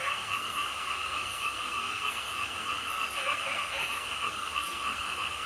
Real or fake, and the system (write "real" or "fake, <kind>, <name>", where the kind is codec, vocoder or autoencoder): fake, codec, SNAC